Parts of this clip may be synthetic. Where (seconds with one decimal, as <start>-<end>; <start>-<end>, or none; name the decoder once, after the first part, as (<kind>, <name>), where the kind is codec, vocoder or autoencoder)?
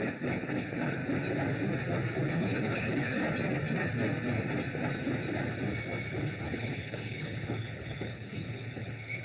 0.0-1.0 (codec, HILCodec); 2.3-3.2; 6.1-9.2